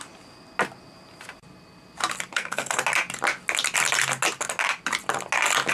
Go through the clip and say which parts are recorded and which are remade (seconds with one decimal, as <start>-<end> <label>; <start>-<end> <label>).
0.0-2.3 recorded; 2.3-2.8 remade; 2.8-5.7 recorded